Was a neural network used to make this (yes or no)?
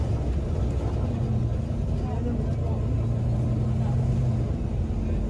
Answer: no